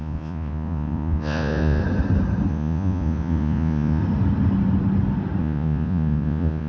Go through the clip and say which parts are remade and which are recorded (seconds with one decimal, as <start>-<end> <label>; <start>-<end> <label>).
0.0-1.8 remade; 1.8-2.5 recorded; 2.5-4.0 remade; 4.0-5.4 recorded; 5.4-6.7 remade